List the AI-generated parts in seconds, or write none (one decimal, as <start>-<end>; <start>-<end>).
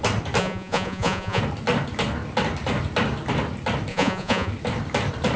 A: 0.4-1.4; 3.9-4.5